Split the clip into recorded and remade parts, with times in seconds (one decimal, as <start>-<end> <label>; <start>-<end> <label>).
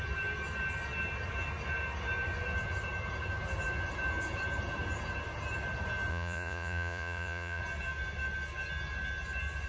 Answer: 0.0-6.1 recorded; 6.1-7.6 remade; 7.6-9.7 recorded